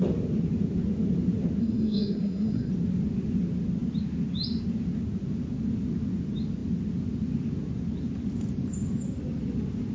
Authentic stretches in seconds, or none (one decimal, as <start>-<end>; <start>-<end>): 0.0-1.6; 2.7-9.9